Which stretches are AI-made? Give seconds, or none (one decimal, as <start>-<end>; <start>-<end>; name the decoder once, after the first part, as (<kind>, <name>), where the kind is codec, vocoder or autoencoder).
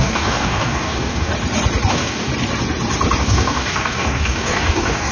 0.0-1.3 (codec, DAC); 1.9-2.3; 3.2-5.1